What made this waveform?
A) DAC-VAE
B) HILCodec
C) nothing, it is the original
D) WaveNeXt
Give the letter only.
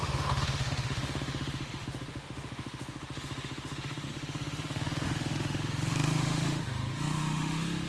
A